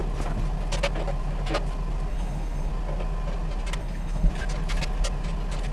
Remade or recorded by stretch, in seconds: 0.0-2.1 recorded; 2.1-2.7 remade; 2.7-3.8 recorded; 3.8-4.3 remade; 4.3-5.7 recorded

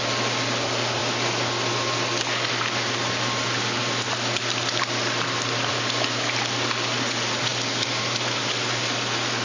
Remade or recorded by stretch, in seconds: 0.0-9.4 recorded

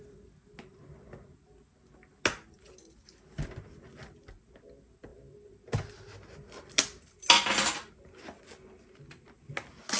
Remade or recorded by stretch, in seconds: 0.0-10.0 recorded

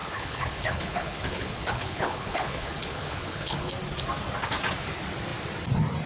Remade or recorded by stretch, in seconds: 0.0-3.7 remade; 3.7-6.1 recorded

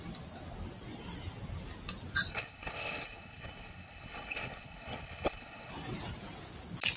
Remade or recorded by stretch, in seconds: 0.0-2.3 recorded; 2.3-5.7 remade; 5.7-7.0 recorded

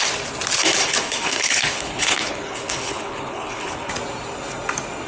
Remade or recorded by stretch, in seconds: 0.0-0.8 recorded; 0.8-3.9 remade; 3.9-5.1 recorded

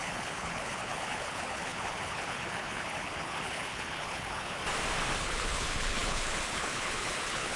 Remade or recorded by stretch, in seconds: 0.0-4.6 remade; 4.6-5.2 recorded; 5.2-7.6 remade